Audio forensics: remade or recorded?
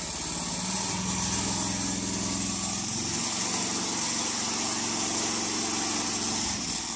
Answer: recorded